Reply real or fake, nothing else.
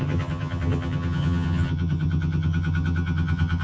fake